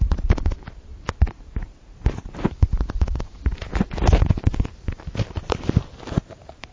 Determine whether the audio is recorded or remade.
remade